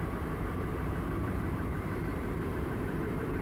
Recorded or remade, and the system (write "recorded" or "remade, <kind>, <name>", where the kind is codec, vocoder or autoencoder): remade, vocoder, BigVGAN v2